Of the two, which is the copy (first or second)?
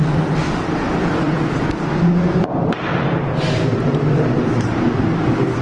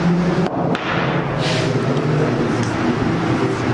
first